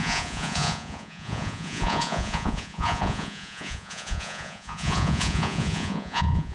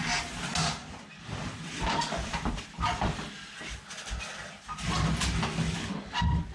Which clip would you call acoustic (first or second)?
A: second